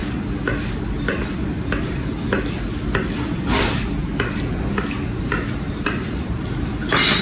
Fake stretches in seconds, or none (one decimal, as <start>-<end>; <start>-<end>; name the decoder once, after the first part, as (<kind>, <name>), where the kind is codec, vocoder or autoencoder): 0.0-4.0 (vocoder, BigVGAN v2); 5.2-7.2